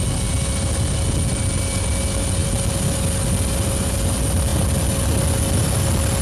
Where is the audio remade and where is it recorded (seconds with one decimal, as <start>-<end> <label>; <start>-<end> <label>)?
0.0-6.2 recorded